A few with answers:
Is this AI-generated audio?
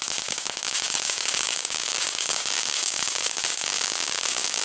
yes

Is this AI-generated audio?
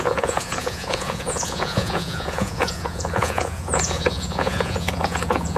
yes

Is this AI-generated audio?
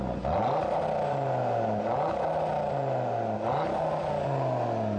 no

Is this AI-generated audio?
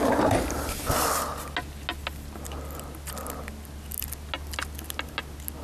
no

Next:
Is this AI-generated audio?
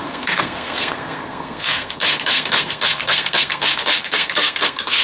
yes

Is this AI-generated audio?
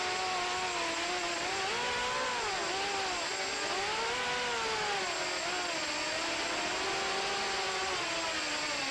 no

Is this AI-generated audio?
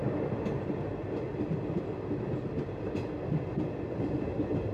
no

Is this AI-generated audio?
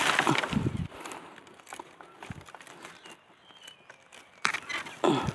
no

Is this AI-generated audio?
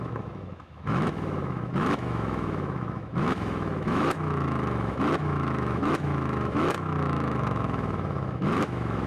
yes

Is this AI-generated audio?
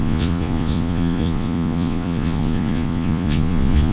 yes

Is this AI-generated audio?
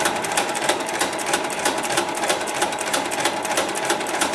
yes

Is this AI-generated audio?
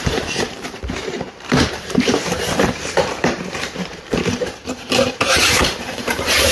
yes